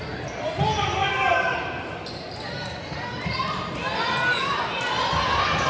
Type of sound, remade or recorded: recorded